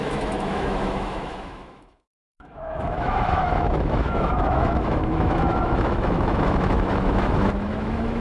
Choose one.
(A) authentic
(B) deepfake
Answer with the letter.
B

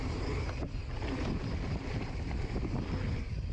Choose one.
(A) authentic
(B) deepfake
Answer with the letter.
A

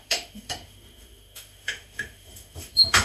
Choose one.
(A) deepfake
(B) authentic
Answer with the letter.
A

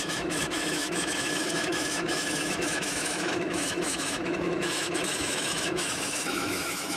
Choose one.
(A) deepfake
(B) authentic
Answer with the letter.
A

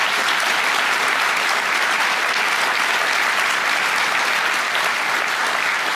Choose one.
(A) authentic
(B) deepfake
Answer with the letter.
A